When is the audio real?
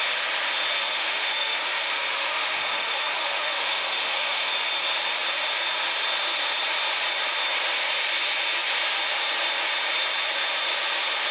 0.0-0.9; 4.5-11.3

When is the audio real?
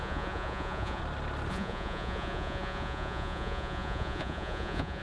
1.0-1.5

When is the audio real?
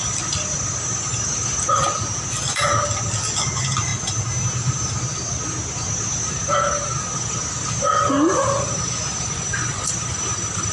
0.0-9.3; 9.9-10.7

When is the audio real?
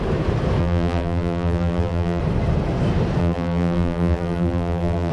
0.0-0.6; 2.2-3.2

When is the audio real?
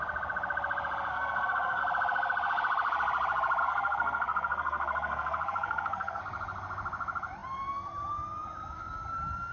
0.0-1.1; 1.8-3.6; 6.2-9.5